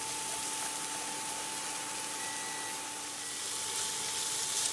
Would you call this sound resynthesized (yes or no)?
no